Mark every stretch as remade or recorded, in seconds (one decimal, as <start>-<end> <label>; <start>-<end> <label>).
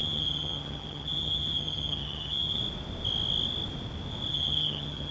0.0-2.6 remade; 2.6-4.3 recorded; 4.3-5.1 remade